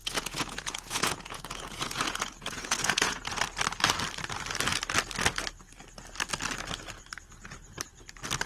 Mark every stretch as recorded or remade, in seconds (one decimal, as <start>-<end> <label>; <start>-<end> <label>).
0.0-3.4 remade; 3.4-8.5 recorded